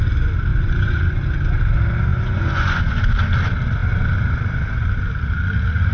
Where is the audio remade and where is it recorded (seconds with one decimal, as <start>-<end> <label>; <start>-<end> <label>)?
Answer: 0.0-0.5 recorded; 0.5-1.0 remade; 1.0-2.1 recorded; 2.1-3.1 remade; 3.1-5.9 recorded